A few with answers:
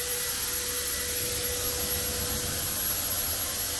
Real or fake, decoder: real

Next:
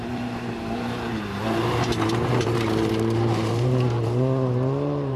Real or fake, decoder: fake, vocoder, BigVGAN v2